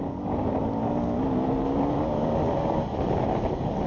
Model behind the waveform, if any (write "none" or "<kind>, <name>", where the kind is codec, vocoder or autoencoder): none